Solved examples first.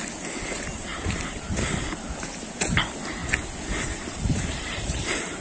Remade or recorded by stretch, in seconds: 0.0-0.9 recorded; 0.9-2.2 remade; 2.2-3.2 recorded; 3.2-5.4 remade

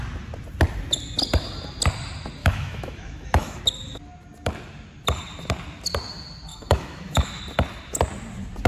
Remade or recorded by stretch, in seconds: 0.0-2.4 recorded; 2.4-3.6 remade; 3.6-6.5 recorded; 6.5-7.4 remade; 7.4-8.7 recorded

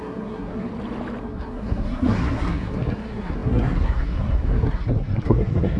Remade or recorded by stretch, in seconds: 0.0-0.7 remade; 0.7-1.2 recorded; 1.2-5.8 remade